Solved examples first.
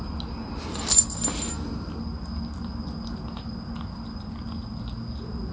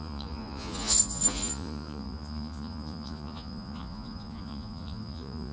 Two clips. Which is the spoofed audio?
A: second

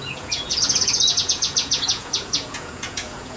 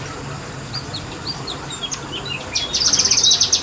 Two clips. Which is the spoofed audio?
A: first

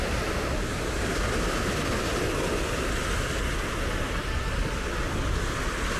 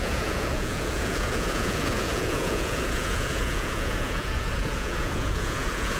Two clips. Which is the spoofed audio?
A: second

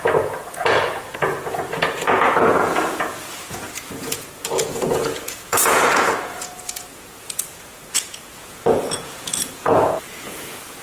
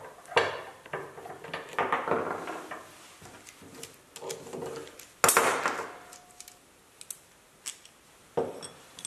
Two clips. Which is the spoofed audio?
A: first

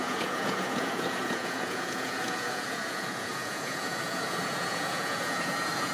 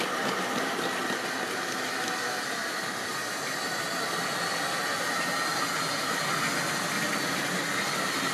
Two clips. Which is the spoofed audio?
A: first